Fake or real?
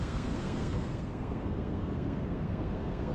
fake